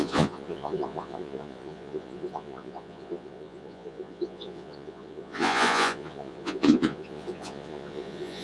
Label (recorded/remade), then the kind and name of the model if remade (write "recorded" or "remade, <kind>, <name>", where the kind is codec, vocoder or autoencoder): remade, vocoder, Vocos